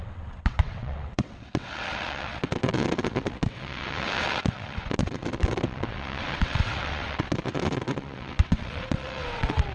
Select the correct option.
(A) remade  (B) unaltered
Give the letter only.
A